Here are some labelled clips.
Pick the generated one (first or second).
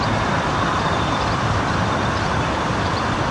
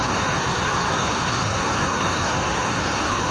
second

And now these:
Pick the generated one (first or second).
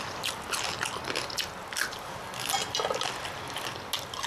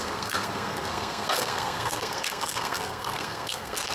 second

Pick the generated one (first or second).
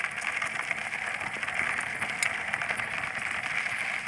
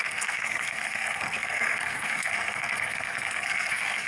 second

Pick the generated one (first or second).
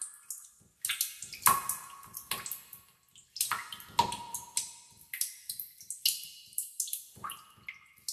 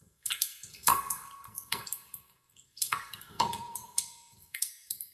second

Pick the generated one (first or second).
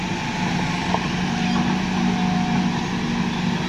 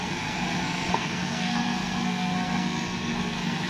second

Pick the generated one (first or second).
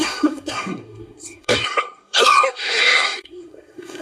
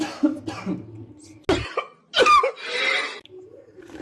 first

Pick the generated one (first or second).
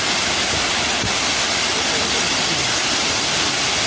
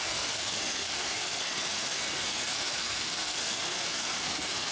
second